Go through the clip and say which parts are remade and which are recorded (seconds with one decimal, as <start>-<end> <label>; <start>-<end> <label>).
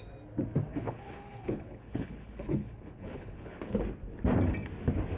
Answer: 0.0-0.7 recorded; 0.7-3.8 remade; 3.8-5.2 recorded